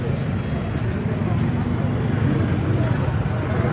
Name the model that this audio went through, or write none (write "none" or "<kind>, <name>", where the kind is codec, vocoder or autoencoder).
none